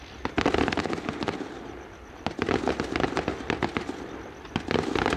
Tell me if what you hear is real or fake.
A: real